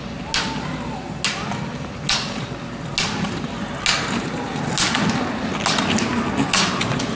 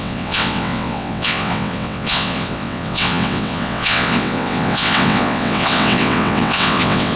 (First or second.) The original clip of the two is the first